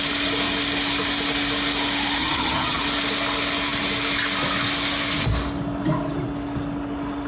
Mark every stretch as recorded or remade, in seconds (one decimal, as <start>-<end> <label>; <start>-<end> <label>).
0.0-2.2 recorded; 2.2-2.8 remade; 2.8-7.3 recorded

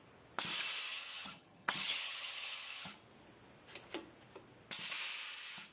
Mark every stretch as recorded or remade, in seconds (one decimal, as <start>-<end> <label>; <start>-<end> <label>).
0.0-0.9 recorded; 0.9-2.9 remade; 2.9-5.7 recorded

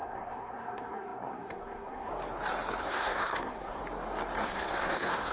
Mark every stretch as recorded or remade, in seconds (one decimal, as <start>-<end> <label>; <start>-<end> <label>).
0.0-2.1 remade; 2.1-2.8 recorded; 2.8-3.8 remade; 3.8-4.4 recorded; 4.4-5.3 remade